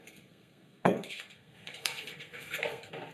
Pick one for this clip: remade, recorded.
remade